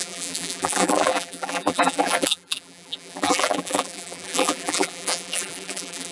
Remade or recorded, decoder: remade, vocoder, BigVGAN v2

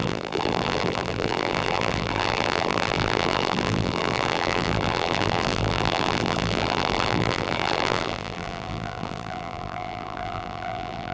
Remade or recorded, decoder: remade, vocoder, BigVGAN v2